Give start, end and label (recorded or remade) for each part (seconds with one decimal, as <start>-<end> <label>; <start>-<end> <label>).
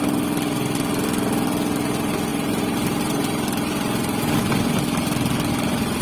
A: 0.0-2.3 recorded; 2.3-4.4 remade; 4.4-6.0 recorded